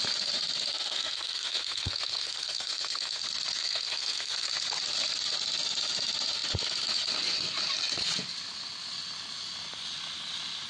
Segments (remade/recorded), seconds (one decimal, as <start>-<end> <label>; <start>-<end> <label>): 0.0-0.7 recorded; 0.7-3.2 remade; 3.2-3.6 recorded; 3.6-4.5 remade; 4.5-10.7 recorded